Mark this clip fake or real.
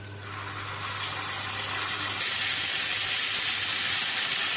real